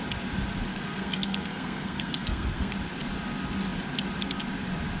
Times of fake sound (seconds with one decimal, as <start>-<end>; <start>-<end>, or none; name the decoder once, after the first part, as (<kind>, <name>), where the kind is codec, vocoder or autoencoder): 0.7-2.7 (codec, SNAC)